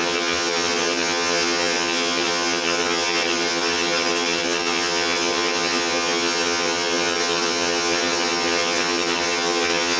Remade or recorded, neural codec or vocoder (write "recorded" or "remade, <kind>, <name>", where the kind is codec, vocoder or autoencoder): remade, vocoder, HiFi-GAN